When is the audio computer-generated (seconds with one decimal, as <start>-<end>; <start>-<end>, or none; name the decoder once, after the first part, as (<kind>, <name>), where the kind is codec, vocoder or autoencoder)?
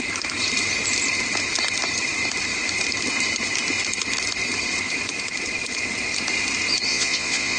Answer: 6.9-7.6 (vocoder, Vocos)